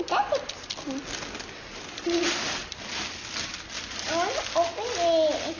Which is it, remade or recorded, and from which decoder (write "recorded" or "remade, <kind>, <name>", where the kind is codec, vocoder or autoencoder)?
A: recorded